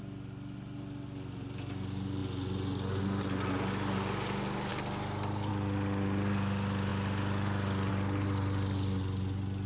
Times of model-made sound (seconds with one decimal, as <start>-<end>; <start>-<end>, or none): none